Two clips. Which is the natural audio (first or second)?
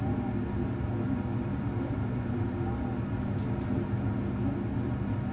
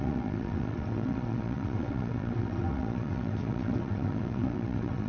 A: first